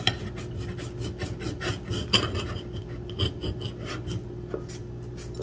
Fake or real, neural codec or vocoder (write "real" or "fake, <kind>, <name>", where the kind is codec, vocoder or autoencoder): real